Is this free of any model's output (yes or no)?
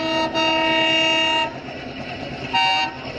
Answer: yes